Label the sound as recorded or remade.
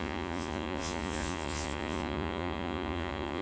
remade